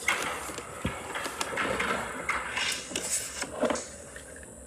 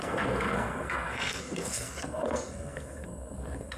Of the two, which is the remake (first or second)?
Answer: second